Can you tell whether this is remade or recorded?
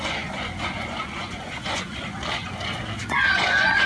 remade